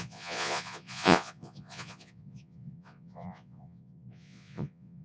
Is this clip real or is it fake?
fake